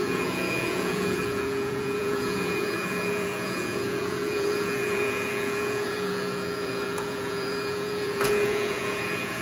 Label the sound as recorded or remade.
remade